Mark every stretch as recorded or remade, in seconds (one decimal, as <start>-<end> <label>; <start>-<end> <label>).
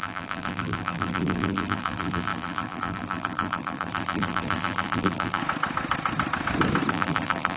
0.0-5.4 remade; 5.4-6.9 recorded; 6.9-7.6 remade